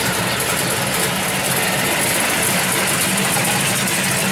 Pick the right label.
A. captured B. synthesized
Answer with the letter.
A